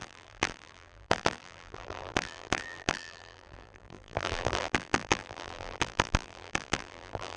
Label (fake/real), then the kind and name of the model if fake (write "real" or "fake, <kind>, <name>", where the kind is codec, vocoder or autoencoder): fake, vocoder, BigVGAN v2